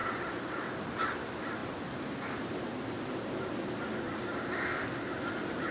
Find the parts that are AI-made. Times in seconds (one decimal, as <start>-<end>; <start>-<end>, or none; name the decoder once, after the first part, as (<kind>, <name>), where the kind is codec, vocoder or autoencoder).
0.0-5.7 (vocoder, BigVGAN v2)